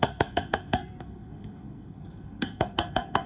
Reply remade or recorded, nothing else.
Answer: remade